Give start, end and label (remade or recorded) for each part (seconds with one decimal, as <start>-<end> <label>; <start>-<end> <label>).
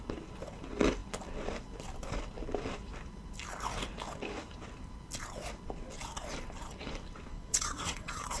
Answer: 0.0-7.3 recorded; 7.3-8.4 remade